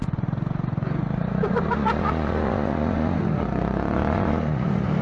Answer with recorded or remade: remade